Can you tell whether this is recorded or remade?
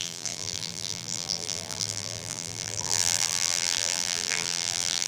remade